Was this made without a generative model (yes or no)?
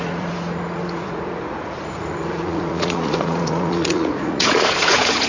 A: no